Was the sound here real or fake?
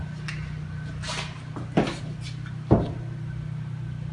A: real